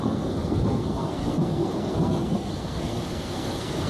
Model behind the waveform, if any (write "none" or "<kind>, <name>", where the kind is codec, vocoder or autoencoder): codec, SNAC